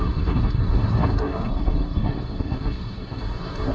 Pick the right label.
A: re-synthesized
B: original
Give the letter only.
A